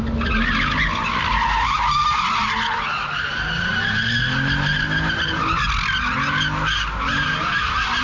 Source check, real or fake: real